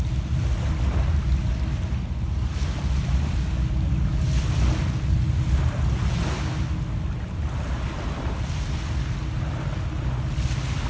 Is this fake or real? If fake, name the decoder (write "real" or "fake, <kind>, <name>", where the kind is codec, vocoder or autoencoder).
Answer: real